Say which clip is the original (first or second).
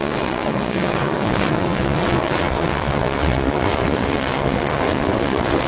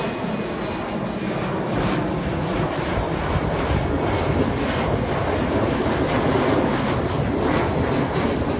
second